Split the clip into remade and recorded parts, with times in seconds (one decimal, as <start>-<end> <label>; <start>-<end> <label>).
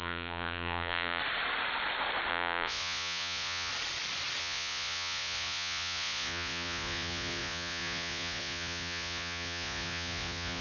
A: 0.0-1.2 remade; 1.2-2.3 recorded; 2.3-3.7 remade; 3.7-4.4 recorded; 4.4-10.6 remade